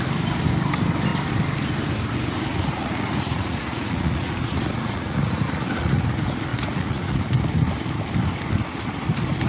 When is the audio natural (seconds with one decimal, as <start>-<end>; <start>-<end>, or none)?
0.0-2.5; 6.0-6.5; 7.2-9.5